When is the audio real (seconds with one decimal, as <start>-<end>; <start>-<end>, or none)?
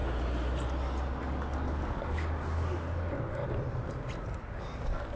0.0-1.2; 3.4-4.3